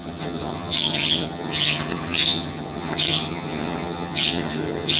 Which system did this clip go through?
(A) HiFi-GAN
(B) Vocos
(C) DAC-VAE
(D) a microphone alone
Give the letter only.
A